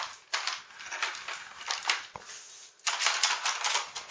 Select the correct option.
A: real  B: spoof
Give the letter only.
A